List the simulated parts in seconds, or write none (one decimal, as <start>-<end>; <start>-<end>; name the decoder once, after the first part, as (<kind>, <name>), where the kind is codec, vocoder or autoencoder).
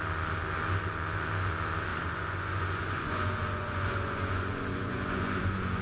1.9-5.8 (vocoder, Vocos)